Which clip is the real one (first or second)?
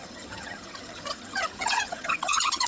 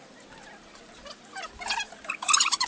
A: second